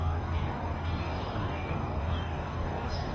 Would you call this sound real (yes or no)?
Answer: no